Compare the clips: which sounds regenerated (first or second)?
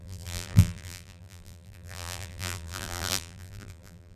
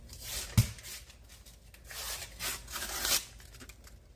first